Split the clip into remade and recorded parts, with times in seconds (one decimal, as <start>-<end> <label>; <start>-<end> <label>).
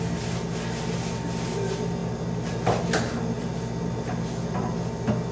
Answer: 0.0-5.3 recorded